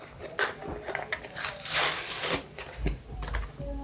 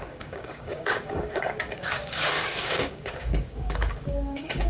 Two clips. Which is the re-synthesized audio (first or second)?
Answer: second